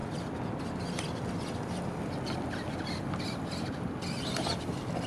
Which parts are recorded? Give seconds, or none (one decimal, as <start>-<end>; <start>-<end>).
0.0-5.1